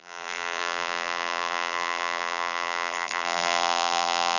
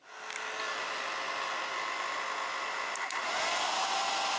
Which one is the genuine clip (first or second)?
second